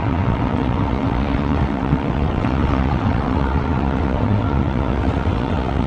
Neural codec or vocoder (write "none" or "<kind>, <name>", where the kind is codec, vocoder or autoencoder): vocoder, WaveNeXt